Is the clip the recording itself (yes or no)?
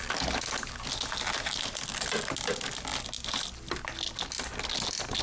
yes